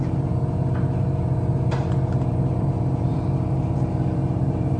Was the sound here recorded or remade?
remade